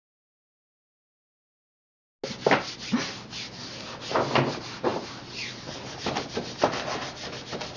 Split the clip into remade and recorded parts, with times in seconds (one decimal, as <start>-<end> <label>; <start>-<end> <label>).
0.0-7.8 recorded